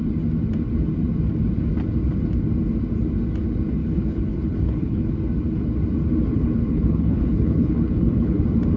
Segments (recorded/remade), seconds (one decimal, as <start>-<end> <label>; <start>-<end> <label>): 0.0-3.8 recorded; 3.8-5.1 remade; 5.1-6.3 recorded; 6.3-8.4 remade; 8.4-8.8 recorded